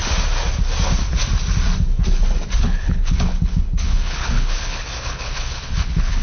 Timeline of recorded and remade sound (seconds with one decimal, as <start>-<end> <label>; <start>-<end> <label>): 0.0-2.6 recorded; 2.6-6.2 remade